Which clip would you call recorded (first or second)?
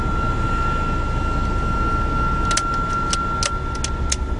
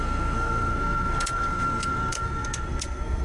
first